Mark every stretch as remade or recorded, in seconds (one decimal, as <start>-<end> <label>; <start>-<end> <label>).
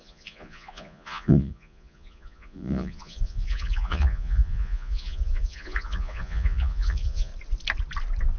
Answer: 0.0-7.3 remade; 7.3-8.4 recorded